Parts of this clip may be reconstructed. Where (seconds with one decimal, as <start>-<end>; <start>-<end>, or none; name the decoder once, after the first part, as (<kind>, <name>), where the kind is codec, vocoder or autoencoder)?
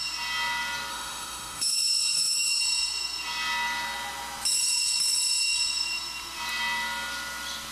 0.9-2.6 (autoencoder, DAC-VAE)